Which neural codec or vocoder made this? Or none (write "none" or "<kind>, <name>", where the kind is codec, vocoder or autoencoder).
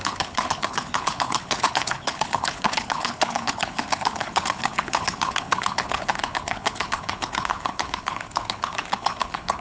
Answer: codec, HILCodec